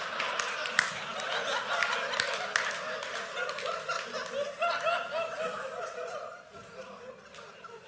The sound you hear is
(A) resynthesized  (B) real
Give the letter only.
B